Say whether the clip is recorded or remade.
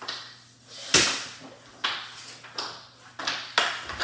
recorded